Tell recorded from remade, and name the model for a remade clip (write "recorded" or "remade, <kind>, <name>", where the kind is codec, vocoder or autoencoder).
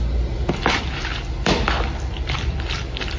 recorded